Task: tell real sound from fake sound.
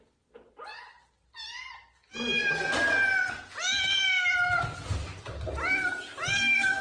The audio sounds real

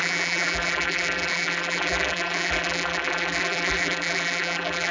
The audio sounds fake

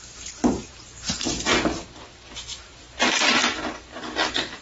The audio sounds real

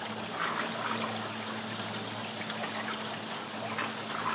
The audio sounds real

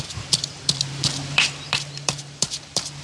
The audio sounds fake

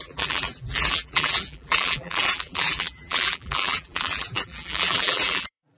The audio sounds fake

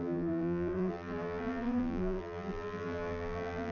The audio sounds fake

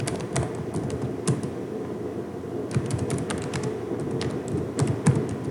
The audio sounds real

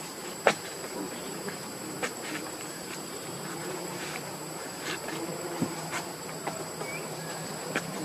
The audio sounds fake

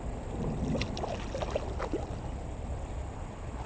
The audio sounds real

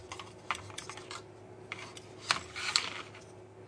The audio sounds real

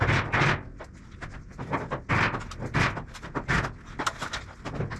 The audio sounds real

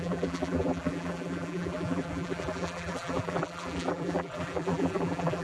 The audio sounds fake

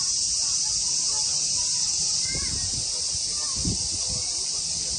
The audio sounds fake